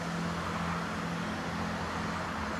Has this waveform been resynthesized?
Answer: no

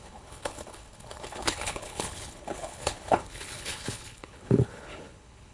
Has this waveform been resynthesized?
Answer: yes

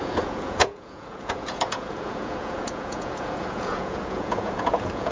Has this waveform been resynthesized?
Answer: yes